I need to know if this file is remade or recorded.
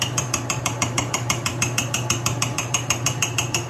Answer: remade